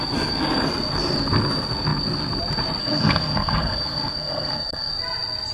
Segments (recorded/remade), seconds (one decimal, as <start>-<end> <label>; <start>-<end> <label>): 0.0-2.8 recorded; 2.8-4.9 remade; 4.9-5.5 recorded